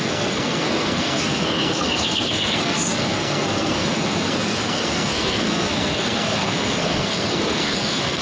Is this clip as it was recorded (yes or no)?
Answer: no